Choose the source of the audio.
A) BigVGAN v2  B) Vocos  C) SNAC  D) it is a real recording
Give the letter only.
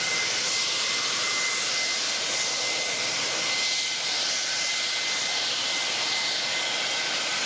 D